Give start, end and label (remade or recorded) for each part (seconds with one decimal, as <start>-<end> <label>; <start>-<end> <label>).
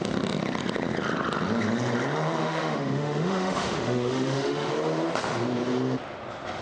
0.0-2.4 recorded; 2.4-4.7 remade; 4.7-6.6 recorded